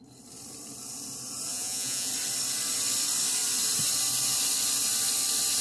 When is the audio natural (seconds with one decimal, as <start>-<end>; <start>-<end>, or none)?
0.0-1.5; 2.1-5.6